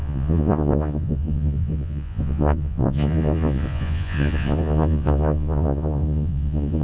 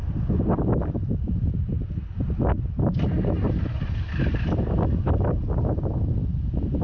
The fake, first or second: first